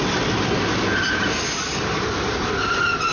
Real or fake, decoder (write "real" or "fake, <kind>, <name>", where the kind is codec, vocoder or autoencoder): real